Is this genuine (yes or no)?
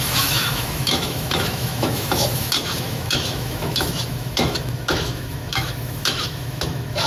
no